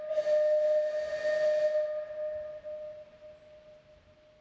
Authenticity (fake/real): real